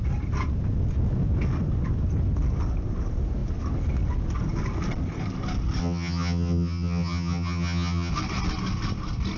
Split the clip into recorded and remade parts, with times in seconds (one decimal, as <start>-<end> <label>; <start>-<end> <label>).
0.0-5.8 recorded; 5.8-8.1 remade; 8.1-9.4 recorded